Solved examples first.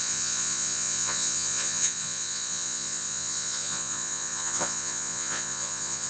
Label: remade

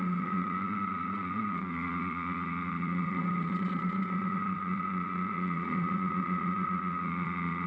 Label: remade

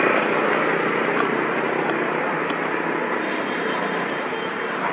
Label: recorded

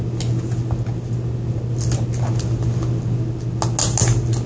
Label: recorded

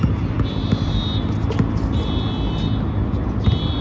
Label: recorded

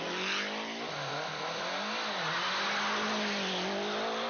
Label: recorded